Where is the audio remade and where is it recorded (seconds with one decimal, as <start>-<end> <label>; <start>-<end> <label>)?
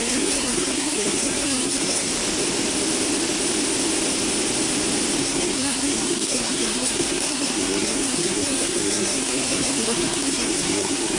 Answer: 0.0-2.1 remade; 2.1-5.2 recorded; 5.2-11.2 remade